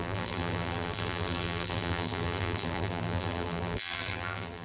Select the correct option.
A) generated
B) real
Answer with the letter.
A